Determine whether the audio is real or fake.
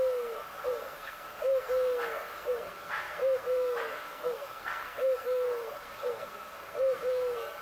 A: fake